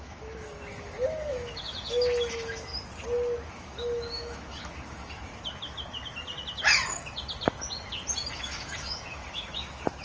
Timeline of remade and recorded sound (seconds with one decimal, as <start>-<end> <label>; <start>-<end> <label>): 0.0-2.7 remade; 2.7-3.5 recorded; 3.5-5.3 remade; 5.3-8.3 recorded; 8.3-10.0 remade